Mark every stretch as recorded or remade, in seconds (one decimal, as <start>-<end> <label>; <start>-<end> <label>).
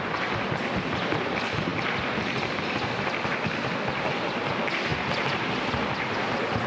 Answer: 0.0-6.7 recorded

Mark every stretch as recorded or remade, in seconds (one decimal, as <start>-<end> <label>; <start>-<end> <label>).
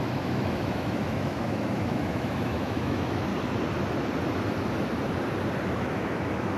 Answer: 0.0-3.3 remade; 3.3-5.7 recorded; 5.7-6.6 remade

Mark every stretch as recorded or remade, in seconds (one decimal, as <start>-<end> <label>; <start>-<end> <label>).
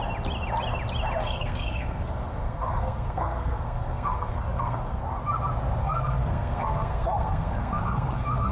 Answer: 0.0-1.2 recorded; 1.2-5.0 remade; 5.0-5.8 recorded; 5.8-8.5 remade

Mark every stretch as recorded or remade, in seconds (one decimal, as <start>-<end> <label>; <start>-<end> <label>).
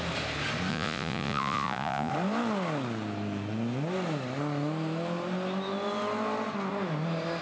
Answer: 0.0-0.7 recorded; 0.7-2.1 remade; 2.1-7.4 recorded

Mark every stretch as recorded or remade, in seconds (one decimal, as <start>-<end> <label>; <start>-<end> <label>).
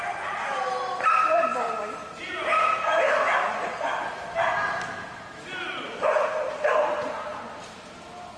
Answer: 0.0-1.5 remade; 1.5-6.5 recorded; 6.5-7.3 remade; 7.3-8.4 recorded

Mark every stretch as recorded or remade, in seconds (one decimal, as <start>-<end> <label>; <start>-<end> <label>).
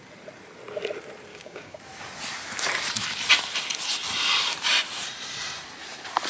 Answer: 0.0-1.3 recorded; 1.3-1.8 remade; 1.8-6.3 recorded